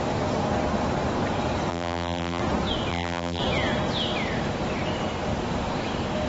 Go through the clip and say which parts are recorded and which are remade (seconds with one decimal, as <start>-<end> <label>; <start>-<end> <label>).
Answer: 0.0-1.7 recorded; 1.7-2.4 remade; 2.4-2.9 recorded; 2.9-3.4 remade; 3.4-6.3 recorded